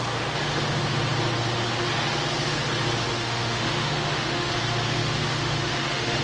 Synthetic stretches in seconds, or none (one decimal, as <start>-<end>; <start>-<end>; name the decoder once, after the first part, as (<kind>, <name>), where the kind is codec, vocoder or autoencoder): 3.1-4.5 (autoencoder, DAC-VAE); 5.0-6.2